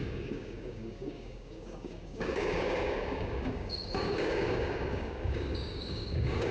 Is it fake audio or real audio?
fake